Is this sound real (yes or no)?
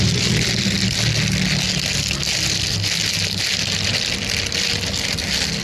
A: yes